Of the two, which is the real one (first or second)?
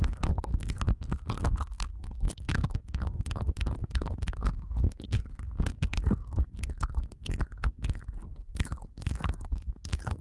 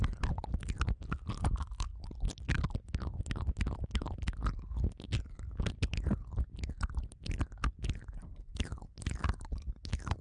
second